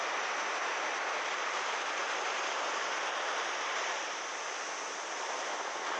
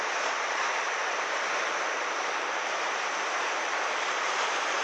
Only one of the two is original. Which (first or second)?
first